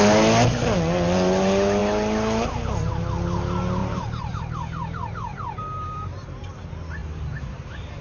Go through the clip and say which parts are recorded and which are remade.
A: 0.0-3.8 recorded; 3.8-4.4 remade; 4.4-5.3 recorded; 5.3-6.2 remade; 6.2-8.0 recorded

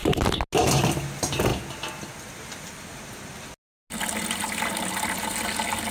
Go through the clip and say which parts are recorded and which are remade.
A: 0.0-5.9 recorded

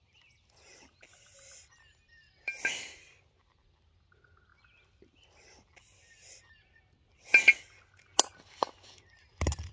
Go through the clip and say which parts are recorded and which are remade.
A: 0.0-9.7 recorded